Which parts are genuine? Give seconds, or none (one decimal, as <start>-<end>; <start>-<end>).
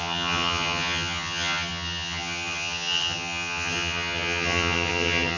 none